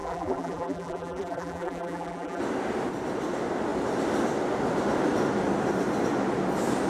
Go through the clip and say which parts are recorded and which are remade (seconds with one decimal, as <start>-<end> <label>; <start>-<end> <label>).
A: 0.0-2.4 remade; 2.4-6.9 recorded